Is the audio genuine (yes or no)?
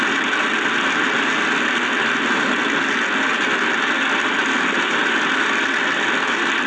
yes